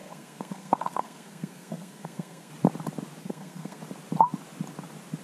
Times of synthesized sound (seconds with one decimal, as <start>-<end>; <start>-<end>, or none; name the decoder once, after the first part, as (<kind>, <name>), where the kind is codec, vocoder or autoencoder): 0.0-2.5 (codec, SNAC); 3.2-3.8